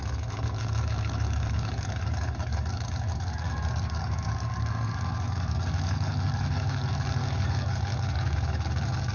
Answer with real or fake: fake